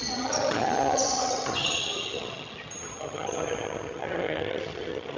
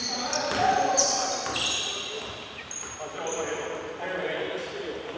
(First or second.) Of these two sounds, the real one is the second